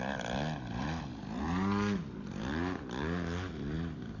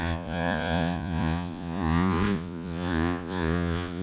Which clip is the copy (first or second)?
second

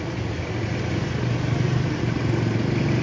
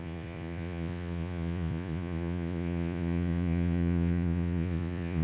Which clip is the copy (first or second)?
second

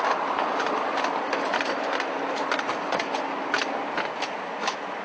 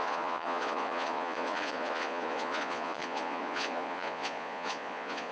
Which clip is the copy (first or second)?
second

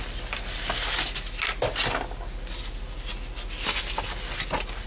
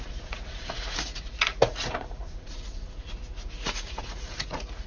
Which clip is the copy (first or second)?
second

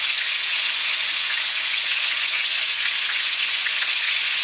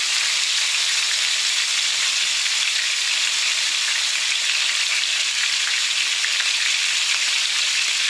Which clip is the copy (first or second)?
first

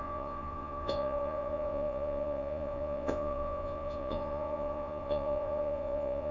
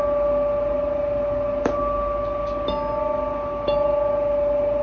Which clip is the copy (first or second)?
first